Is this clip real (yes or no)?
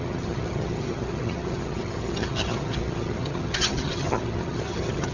no